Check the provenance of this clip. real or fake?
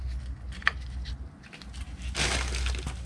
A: real